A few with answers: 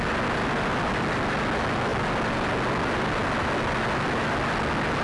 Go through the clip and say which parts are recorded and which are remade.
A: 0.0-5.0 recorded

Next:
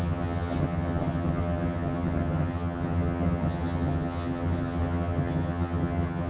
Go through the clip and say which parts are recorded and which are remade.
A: 0.0-6.3 remade